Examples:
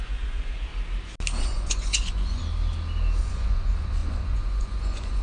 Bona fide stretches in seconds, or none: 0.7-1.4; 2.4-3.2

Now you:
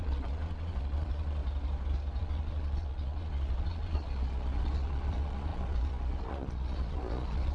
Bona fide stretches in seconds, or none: 1.4-2.2